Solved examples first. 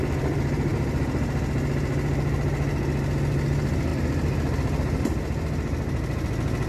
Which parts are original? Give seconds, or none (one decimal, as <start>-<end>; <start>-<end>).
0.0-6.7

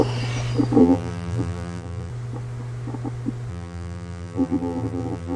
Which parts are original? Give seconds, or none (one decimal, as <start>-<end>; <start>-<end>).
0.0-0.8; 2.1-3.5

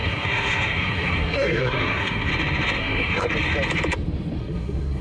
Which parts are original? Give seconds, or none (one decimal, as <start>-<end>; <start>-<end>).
2.3-2.8; 3.3-4.4